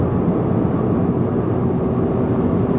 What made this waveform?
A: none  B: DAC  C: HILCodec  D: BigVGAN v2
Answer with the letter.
A